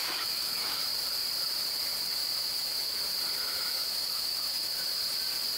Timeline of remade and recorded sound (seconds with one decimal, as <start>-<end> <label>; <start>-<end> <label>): 0.0-0.9 remade; 0.9-2.2 recorded; 2.2-3.0 remade; 3.0-3.4 recorded; 3.4-5.0 remade; 5.0-5.6 recorded